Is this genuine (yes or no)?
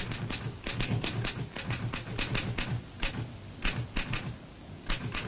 yes